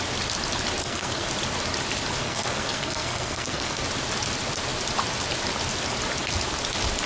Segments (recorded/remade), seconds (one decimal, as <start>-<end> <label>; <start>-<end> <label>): 0.0-0.8 recorded; 0.8-1.3 remade; 1.3-2.2 recorded; 2.2-3.8 remade; 3.8-7.1 recorded